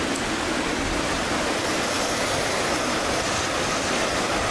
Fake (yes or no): no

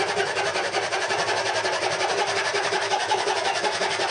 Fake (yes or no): yes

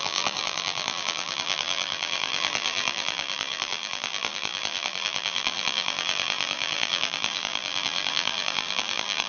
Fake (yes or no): yes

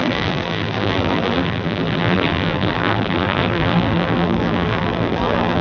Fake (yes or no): yes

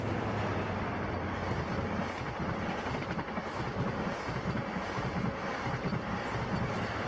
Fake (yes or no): yes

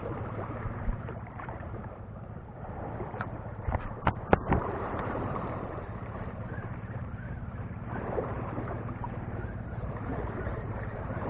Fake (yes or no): yes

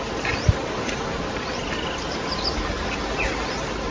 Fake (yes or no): no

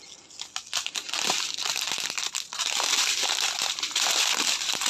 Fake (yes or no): no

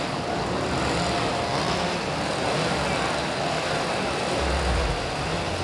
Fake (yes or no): no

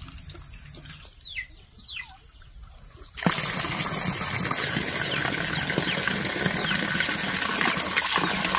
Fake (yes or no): no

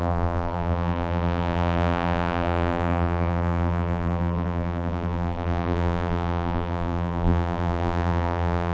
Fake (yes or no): yes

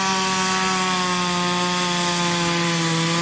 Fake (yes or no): no